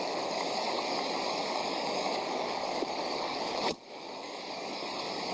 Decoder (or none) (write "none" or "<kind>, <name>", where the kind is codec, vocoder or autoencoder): codec, DAC